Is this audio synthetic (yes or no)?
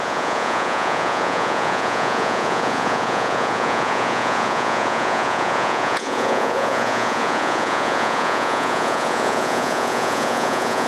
yes